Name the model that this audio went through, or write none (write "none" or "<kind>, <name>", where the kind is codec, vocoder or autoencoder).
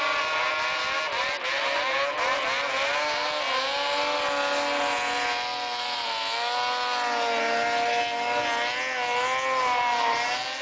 none